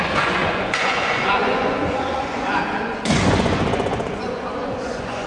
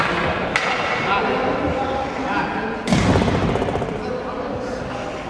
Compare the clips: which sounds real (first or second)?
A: second